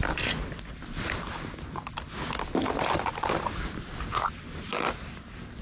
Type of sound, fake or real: real